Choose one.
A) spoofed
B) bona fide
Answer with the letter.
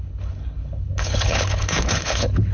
A